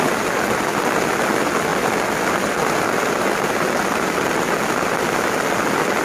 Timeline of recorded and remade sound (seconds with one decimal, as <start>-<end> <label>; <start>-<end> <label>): 0.0-6.0 recorded